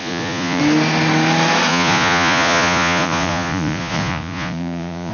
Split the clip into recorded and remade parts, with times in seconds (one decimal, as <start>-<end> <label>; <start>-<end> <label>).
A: 0.0-0.6 remade; 0.6-1.7 recorded; 1.7-5.1 remade